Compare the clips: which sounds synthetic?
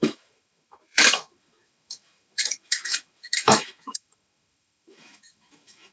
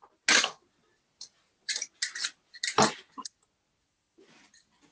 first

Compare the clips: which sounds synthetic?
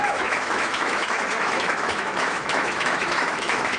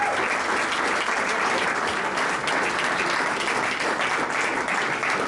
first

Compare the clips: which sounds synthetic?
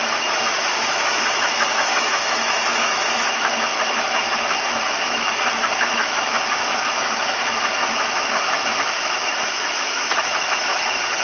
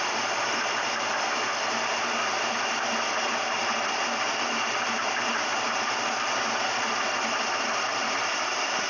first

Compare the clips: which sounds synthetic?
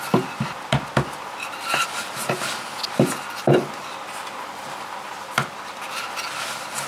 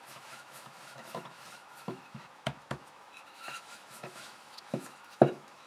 second